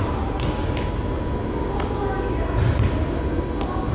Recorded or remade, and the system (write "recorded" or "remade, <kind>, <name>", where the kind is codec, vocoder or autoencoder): recorded